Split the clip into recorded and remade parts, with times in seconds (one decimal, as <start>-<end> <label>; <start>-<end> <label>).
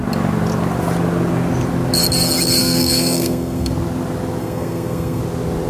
0.0-2.6 recorded; 2.6-3.7 remade; 3.7-4.4 recorded; 4.4-5.2 remade; 5.2-5.7 recorded